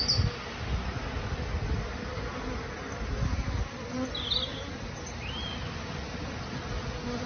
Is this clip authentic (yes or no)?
yes